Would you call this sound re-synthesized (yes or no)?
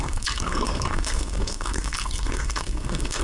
yes